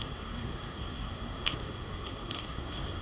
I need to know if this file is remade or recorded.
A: remade